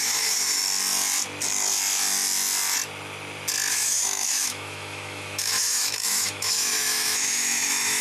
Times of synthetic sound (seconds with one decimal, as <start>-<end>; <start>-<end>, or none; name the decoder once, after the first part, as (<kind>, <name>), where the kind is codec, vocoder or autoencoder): 0.0-0.6 (autoencoder, DAC-VAE); 3.7-8.0